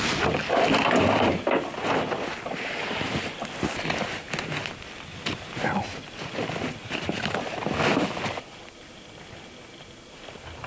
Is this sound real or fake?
real